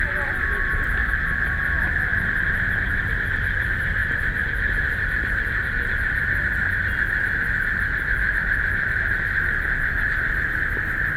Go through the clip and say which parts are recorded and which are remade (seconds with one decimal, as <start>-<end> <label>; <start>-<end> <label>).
0.0-11.2 recorded